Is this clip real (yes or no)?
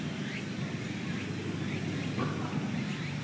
yes